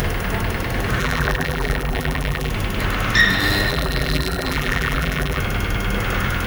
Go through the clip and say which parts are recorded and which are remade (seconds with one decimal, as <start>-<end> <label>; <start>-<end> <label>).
0.0-1.0 recorded; 1.0-2.5 remade; 2.5-3.7 recorded; 3.7-5.4 remade; 5.4-6.5 recorded